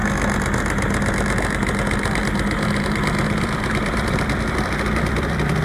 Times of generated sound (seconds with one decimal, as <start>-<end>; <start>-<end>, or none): 2.8-5.6